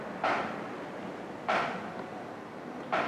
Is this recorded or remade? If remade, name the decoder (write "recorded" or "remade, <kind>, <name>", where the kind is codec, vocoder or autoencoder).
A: recorded